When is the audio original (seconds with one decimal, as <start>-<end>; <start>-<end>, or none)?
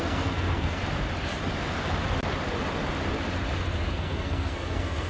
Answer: 0.8-3.9